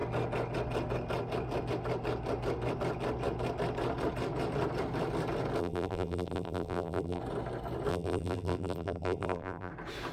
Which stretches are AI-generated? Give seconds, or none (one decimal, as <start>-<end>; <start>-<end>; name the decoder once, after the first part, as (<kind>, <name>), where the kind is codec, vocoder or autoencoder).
5.6-7.2 (vocoder, BigVGAN v2); 7.9-9.7